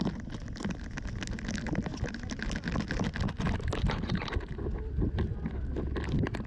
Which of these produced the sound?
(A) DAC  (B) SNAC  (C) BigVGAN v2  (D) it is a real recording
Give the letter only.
D